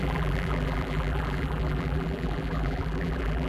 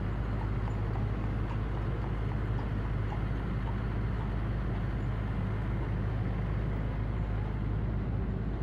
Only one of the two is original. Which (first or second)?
second